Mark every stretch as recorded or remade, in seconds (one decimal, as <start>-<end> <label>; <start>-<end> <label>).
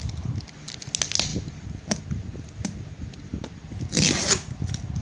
0.0-5.0 recorded